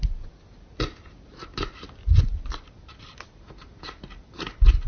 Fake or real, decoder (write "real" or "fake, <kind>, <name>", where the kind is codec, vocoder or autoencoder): real